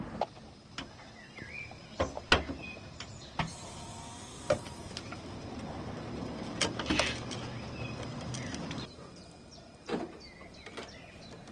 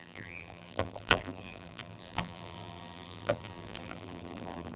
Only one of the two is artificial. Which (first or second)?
second